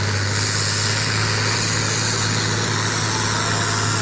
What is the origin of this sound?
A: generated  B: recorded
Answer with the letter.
B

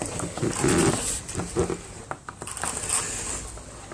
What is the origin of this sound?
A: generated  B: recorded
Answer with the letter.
B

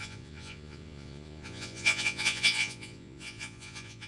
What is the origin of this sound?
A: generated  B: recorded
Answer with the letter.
A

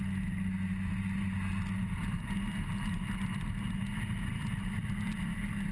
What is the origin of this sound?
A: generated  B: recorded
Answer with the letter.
B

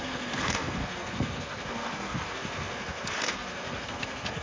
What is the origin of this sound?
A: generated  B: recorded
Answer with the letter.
A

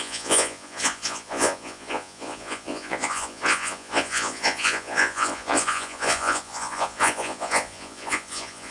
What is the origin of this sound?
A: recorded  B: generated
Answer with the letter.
B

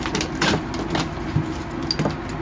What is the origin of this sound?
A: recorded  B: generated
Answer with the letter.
A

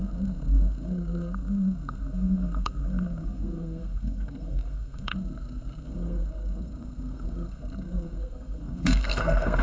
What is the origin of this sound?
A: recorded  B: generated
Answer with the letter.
B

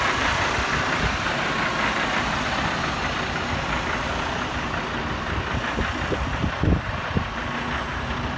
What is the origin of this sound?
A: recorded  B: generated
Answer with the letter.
A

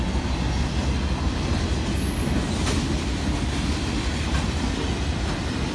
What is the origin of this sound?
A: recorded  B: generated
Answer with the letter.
A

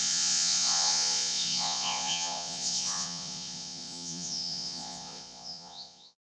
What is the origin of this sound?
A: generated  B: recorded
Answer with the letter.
A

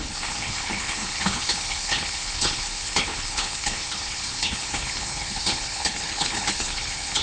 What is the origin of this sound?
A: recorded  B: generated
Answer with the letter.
B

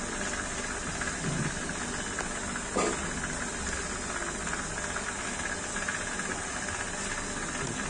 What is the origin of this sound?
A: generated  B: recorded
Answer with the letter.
B